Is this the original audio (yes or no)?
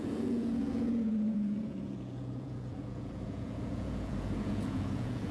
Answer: no